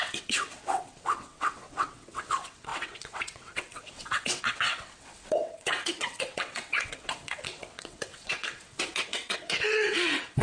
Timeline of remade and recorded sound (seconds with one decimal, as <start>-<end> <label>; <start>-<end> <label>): 0.0-10.4 remade